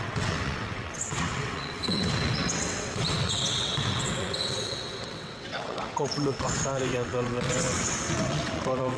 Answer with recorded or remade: remade